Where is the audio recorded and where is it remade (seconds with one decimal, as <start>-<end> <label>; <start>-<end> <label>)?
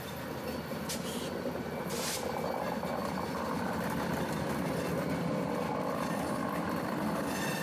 0.0-3.0 recorded; 3.0-4.1 remade; 4.1-7.6 recorded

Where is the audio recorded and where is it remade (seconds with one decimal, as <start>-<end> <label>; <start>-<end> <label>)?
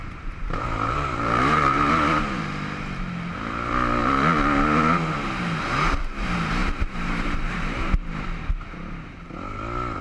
0.0-1.9 remade; 1.9-6.6 recorded; 6.6-8.1 remade; 8.1-10.0 recorded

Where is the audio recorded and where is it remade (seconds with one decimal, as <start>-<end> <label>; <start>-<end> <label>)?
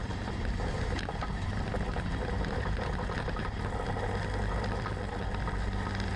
0.0-3.6 remade; 3.6-6.2 recorded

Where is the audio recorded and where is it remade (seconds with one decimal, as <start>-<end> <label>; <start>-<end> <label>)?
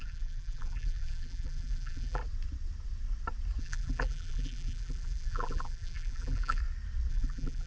0.0-2.2 remade; 2.2-3.6 recorded; 3.6-6.6 remade; 6.6-7.1 recorded; 7.1-7.7 remade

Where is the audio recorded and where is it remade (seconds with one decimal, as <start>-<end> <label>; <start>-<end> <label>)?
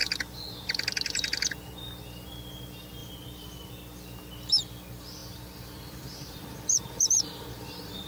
0.0-3.0 recorded; 3.0-3.7 remade; 3.7-5.2 recorded; 5.2-8.1 remade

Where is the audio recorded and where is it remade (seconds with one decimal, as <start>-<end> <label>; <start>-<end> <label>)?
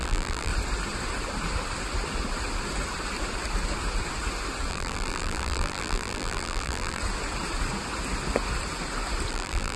0.0-0.5 remade; 0.5-4.7 recorded; 4.7-7.0 remade; 7.0-9.3 recorded; 9.3-9.8 remade